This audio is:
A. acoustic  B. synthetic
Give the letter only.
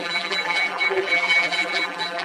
B